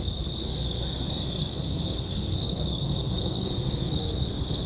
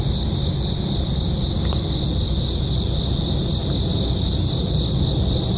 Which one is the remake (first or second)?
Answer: first